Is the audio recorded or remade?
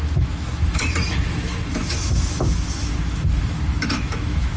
remade